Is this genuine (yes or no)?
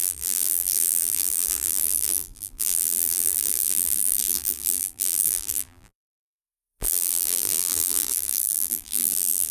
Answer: no